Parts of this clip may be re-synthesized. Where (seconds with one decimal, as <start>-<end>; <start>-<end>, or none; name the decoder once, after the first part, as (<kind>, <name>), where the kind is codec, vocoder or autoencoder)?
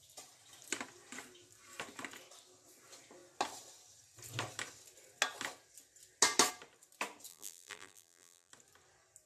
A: 7.3-8.5 (vocoder, BigVGAN v2)